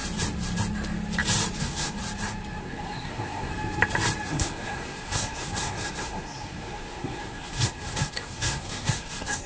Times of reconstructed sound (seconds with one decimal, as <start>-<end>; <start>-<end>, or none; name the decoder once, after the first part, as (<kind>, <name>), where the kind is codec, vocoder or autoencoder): 1.6-2.0 (codec, SNAC); 2.6-3.5; 4.3-9.5